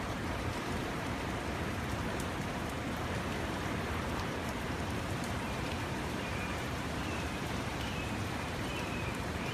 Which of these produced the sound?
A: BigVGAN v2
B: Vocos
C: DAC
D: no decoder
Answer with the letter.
A